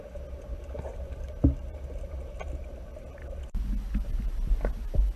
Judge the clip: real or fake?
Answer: real